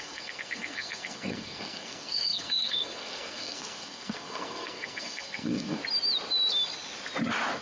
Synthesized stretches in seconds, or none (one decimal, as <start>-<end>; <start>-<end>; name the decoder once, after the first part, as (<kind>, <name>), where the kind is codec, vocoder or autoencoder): 0.0-5.8 (codec, SNAC)